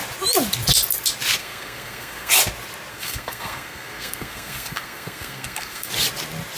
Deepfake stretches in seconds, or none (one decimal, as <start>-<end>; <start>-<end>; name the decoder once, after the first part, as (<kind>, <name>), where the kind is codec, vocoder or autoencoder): 1.4-2.3 (codec, SNAC); 2.9-5.9